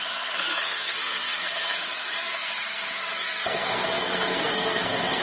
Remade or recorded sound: remade